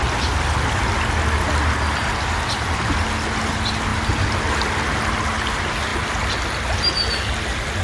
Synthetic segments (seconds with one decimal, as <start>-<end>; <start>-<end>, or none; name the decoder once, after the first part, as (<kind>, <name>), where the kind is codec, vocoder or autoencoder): none